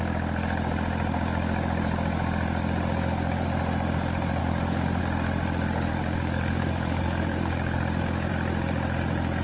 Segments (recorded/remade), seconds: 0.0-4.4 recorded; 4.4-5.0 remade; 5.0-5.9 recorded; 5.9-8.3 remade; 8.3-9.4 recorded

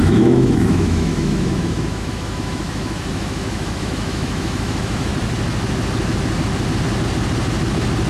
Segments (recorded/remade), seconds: 0.0-5.1 remade; 5.1-8.1 recorded

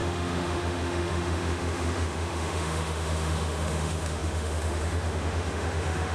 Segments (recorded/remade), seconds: 0.0-6.1 remade

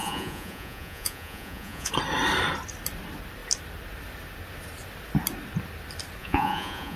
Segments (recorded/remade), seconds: 0.0-1.9 remade; 1.9-6.2 recorded; 6.2-7.0 remade

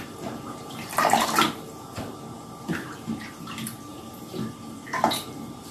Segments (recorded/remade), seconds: 0.0-5.7 remade

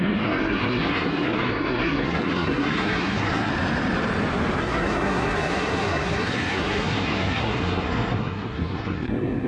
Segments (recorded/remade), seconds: 0.0-3.5 remade; 3.5-4.6 recorded; 4.6-9.5 remade

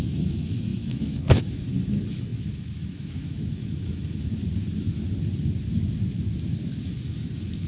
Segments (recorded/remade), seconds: 0.0-4.4 remade; 4.4-6.8 recorded; 6.8-7.7 remade

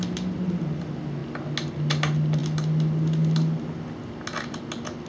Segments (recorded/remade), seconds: 0.0-5.1 recorded